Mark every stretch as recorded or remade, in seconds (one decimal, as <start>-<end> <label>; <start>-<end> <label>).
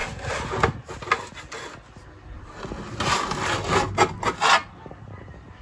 0.0-5.6 recorded